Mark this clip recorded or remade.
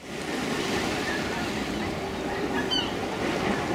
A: recorded